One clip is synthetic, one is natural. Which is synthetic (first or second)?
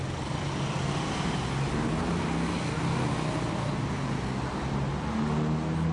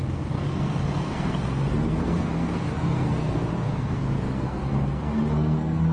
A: second